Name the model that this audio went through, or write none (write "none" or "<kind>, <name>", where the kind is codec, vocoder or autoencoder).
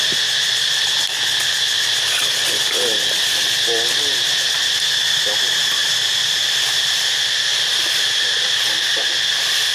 none